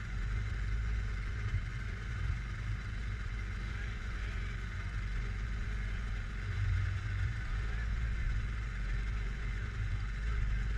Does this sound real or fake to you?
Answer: fake